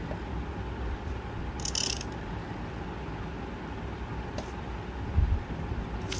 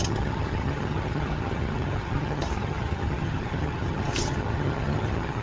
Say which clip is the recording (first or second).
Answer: first